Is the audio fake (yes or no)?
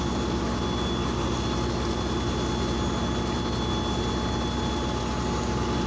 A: no